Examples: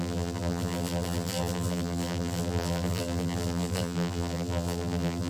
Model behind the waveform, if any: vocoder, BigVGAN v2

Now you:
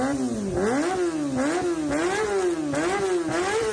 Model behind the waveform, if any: none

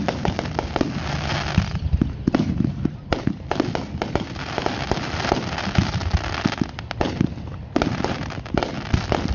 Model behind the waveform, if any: none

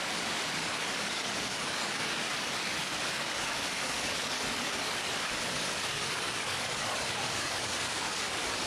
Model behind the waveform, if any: codec, DAC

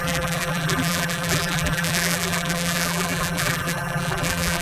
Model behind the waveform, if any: vocoder, BigVGAN v2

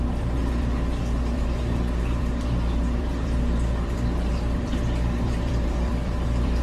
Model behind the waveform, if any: vocoder, BigVGAN v2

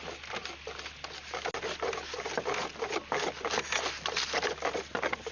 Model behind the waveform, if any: none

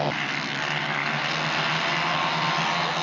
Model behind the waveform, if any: none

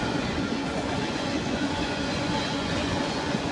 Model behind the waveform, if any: vocoder, Vocos